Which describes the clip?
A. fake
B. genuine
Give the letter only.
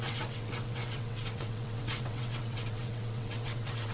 A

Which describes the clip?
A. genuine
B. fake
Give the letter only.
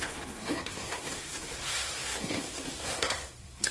B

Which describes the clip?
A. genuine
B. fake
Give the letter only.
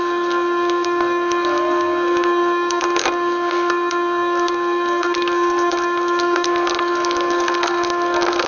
B